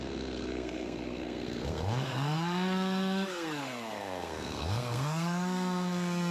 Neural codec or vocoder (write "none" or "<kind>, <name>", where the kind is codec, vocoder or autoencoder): codec, SNAC